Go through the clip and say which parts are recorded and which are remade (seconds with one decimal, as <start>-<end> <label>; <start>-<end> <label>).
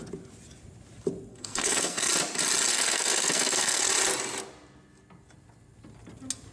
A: 0.0-1.3 recorded; 1.3-2.1 remade; 2.1-2.7 recorded; 2.7-3.8 remade; 3.8-6.5 recorded